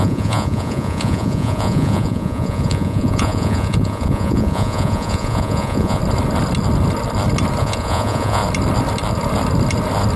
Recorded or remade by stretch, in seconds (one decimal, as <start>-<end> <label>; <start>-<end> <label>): 0.0-6.0 remade; 6.0-7.6 recorded; 7.6-8.4 remade; 8.4-10.2 recorded